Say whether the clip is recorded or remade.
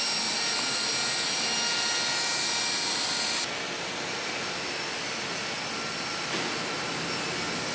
recorded